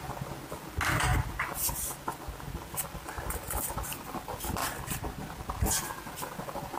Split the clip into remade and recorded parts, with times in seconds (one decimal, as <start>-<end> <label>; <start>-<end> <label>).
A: 0.0-1.1 recorded; 1.1-3.3 remade; 3.3-4.6 recorded; 4.6-5.2 remade; 5.2-6.8 recorded